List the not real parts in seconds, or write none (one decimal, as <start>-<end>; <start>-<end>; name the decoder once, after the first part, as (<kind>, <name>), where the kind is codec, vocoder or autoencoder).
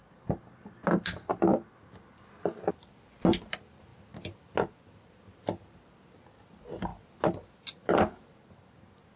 none